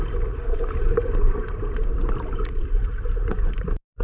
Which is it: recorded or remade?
recorded